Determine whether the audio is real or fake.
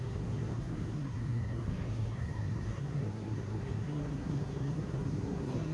fake